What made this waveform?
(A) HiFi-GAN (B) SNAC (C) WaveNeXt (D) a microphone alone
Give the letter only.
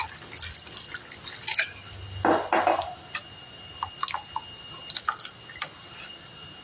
D